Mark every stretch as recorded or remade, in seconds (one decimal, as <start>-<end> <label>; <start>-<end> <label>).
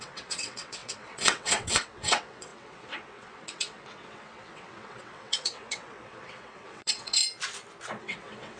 0.0-7.2 remade; 7.2-8.0 recorded; 8.0-8.6 remade